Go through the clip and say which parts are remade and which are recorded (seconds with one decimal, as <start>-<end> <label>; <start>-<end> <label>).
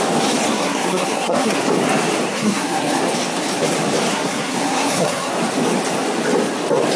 0.0-0.5 recorded; 0.5-1.6 remade; 1.6-2.3 recorded; 2.3-3.0 remade; 3.0-4.1 recorded; 4.1-5.3 remade; 5.3-7.0 recorded